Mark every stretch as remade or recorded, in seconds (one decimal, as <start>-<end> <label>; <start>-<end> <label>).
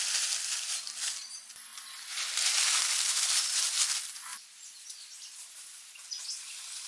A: 0.0-6.9 recorded